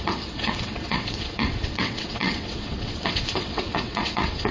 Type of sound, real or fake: fake